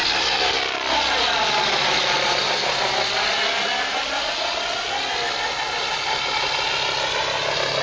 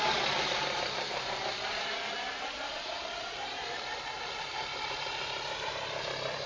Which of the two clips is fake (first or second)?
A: second